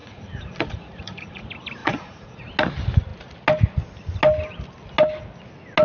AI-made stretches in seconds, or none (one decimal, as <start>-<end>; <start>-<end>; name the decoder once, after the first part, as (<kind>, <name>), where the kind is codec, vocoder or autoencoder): 0.0-1.4 (vocoder, Vocos); 1.8-2.4